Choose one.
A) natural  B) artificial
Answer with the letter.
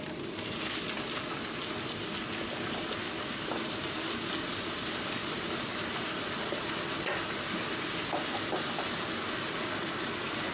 A